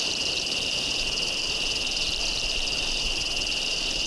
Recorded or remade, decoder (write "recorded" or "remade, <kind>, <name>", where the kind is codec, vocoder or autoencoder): remade, vocoder, BigVGAN v2